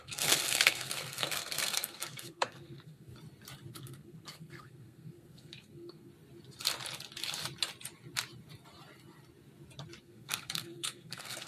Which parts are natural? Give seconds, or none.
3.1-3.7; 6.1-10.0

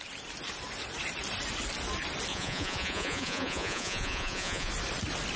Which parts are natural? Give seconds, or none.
0.0-2.3; 4.7-5.4

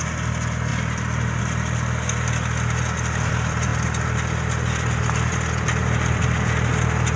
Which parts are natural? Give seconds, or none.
0.0-7.2

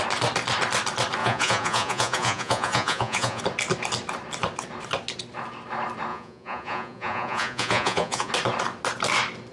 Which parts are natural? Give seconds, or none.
0.0-1.2; 3.4-6.1; 8.3-9.5

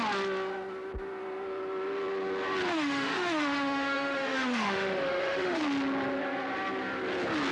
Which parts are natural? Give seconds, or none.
0.0-2.7; 5.6-7.5